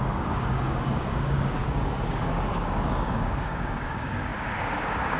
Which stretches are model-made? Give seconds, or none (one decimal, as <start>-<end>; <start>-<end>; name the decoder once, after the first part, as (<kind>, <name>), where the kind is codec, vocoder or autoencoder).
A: 0.0-5.2 (codec, DAC)